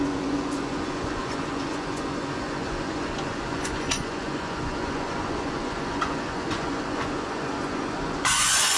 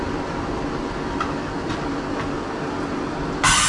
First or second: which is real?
second